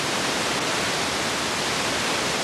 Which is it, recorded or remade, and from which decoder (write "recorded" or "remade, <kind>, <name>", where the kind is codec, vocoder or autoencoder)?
recorded